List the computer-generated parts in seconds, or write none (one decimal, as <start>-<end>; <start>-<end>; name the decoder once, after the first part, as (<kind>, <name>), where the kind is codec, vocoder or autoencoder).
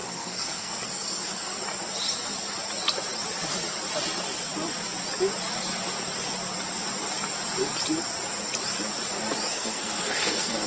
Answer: 0.0-1.6 (codec, SNAC); 9.5-10.7